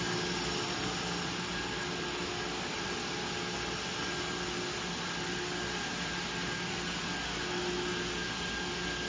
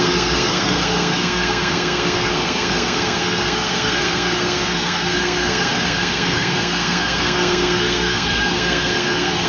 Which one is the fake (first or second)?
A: second